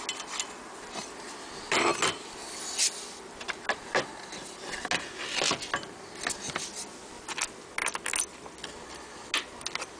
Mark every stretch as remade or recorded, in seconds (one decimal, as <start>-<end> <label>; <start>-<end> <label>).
0.0-10.0 recorded